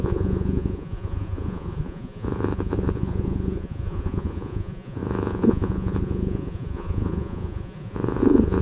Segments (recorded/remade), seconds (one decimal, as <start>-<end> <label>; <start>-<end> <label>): 0.0-8.6 remade

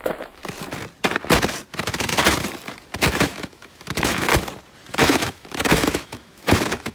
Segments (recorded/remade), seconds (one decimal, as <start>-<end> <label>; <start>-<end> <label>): 0.0-0.4 remade; 0.4-1.7 recorded; 1.7-2.1 remade; 2.1-3.0 recorded; 3.0-4.3 remade; 4.3-4.9 recorded; 4.9-6.9 remade

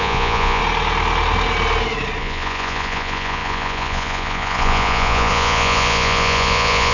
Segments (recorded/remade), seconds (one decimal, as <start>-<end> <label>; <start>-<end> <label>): 0.0-0.6 remade; 0.6-2.2 recorded; 2.2-6.9 remade